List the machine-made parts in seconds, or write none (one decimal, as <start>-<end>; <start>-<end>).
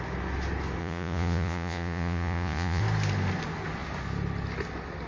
0.8-2.8